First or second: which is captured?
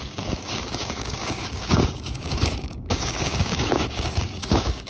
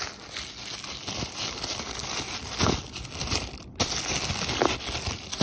second